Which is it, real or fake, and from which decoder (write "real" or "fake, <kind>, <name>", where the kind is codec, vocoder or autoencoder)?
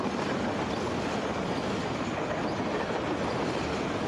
real